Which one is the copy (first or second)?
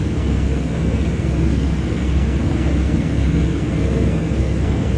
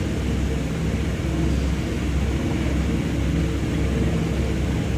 first